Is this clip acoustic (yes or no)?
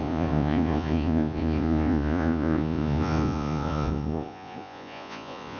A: no